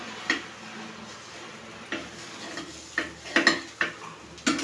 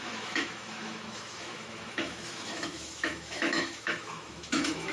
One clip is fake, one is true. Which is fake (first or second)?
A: second